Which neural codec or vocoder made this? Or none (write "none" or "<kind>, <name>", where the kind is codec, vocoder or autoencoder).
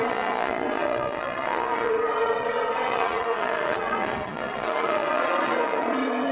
vocoder, Vocos